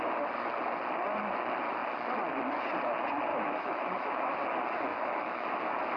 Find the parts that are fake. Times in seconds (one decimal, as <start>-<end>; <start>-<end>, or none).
3.3-4.4; 4.9-5.5

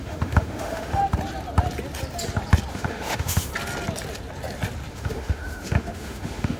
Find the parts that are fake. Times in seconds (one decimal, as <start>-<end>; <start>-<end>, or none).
0.0-1.0; 2.7-3.5; 4.9-6.6

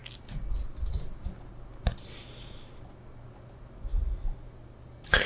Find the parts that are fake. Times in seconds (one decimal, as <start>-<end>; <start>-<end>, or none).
none

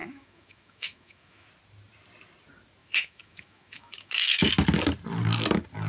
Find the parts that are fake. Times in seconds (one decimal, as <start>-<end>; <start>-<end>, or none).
0.0-1.5; 2.8-4.5

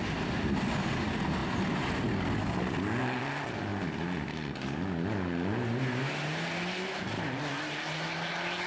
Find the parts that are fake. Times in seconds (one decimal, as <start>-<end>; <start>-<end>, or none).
none

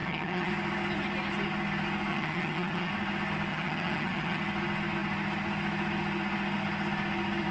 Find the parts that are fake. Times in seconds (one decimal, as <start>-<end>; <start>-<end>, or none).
0.0-0.5; 2.1-2.9; 3.5-4.4

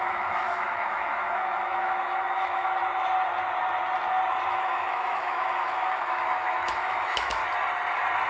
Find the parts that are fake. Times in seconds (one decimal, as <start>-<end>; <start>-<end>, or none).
0.0-2.8; 4.5-7.4

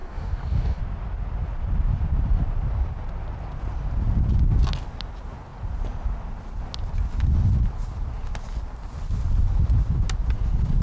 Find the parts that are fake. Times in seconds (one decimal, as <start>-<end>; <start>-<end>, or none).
0.0-0.8